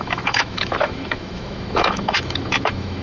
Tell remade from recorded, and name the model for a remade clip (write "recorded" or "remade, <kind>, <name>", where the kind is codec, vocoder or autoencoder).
remade, autoencoder, DAC-VAE